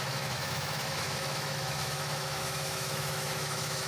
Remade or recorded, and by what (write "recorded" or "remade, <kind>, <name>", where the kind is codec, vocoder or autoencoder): remade, autoencoder, DAC-VAE